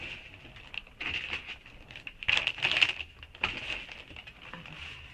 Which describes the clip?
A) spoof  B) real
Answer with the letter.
B